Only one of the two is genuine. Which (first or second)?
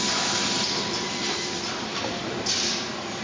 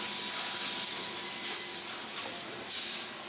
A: second